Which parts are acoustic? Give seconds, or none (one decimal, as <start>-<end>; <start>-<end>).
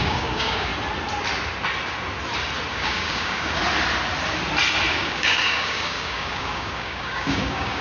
0.7-2.7; 3.6-4.9